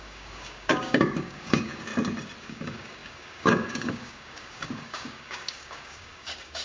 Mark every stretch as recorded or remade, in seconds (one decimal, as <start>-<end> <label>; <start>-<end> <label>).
0.0-1.9 remade; 1.9-2.4 recorded; 2.4-6.6 remade